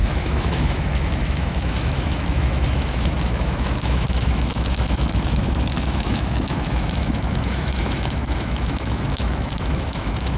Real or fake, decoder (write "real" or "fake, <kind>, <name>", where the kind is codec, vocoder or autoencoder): fake, autoencoder, DAC-VAE